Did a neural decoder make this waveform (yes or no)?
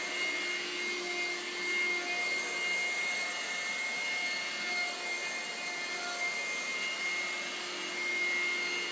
no